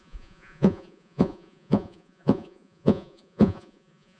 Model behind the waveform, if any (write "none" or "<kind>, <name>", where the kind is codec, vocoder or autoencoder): vocoder, Vocos